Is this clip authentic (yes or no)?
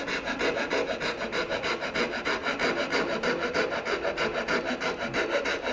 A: yes